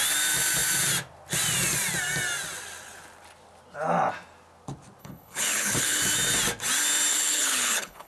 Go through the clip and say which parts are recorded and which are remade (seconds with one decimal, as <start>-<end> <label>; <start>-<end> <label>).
0.0-5.0 recorded; 5.0-6.0 remade; 6.0-7.1 recorded; 7.1-8.1 remade